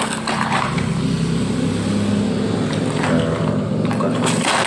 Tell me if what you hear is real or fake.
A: real